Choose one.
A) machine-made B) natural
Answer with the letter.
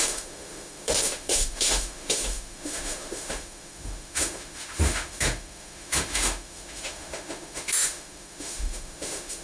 A